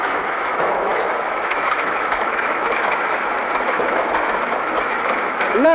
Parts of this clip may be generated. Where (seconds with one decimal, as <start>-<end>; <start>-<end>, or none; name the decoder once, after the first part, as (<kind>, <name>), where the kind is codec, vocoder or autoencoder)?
0.0-5.7 (autoencoder, DAC-VAE)

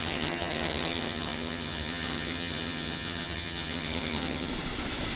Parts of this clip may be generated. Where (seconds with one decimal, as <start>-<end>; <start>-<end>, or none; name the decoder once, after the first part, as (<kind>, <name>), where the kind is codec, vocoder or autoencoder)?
0.0-4.5 (vocoder, HiFi-GAN)

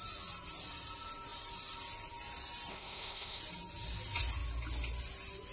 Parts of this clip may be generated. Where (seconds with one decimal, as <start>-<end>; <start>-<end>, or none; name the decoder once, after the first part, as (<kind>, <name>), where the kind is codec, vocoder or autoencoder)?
2.7-3.4 (codec, SNAC)

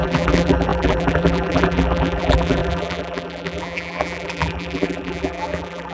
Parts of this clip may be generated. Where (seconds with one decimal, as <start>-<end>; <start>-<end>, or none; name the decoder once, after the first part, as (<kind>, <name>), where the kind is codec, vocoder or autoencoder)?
0.0-5.9 (vocoder, BigVGAN v2)

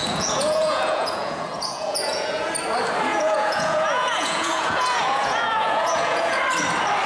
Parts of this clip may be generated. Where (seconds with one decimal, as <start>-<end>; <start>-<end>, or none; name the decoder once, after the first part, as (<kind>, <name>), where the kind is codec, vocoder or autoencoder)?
0.0-2.5 (vocoder, Vocos); 3.1-6.4

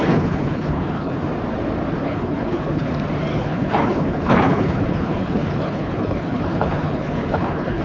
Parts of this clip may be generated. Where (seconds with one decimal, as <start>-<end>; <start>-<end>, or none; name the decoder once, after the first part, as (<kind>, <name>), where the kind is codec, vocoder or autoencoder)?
0.0-1.2 (codec, HILCodec); 2.0-2.9; 3.3-7.8